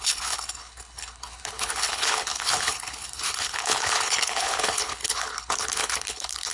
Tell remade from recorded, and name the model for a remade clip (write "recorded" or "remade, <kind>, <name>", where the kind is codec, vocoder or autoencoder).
remade, codec, HILCodec